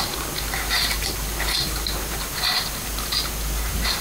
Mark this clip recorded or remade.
recorded